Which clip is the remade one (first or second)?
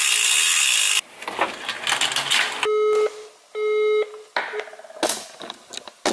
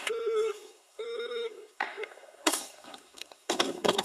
second